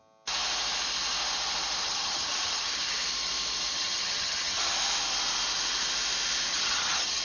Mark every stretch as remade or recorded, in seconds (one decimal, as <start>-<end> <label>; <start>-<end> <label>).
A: 0.0-1.8 recorded; 1.8-2.9 remade; 2.9-3.7 recorded; 3.7-4.7 remade; 4.7-6.5 recorded; 6.5-7.2 remade